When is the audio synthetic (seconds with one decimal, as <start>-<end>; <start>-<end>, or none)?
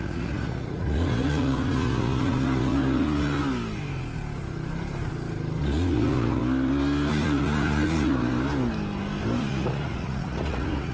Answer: 0.0-3.4; 5.6-6.4; 7.1-8.3; 9.4-10.9